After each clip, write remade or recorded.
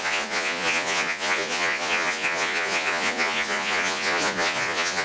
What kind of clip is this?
remade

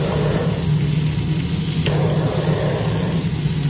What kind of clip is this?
recorded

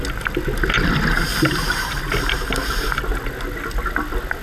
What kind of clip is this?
recorded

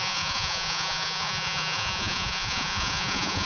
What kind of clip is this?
remade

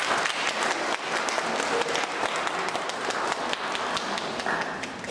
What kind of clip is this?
recorded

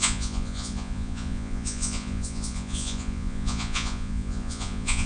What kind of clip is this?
remade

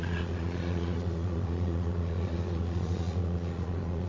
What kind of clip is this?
remade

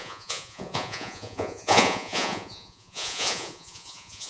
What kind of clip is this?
remade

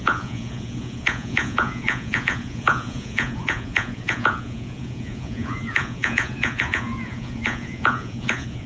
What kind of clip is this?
remade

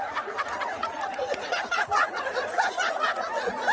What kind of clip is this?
remade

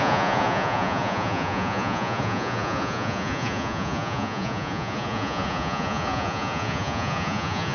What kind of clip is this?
remade